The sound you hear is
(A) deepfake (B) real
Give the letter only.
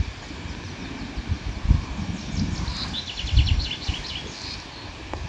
B